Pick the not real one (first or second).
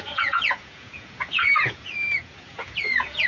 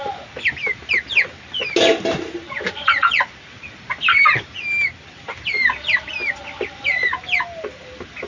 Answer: first